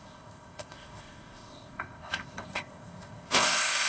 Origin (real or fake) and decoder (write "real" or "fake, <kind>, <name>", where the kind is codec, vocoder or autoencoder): fake, codec, ZipCodec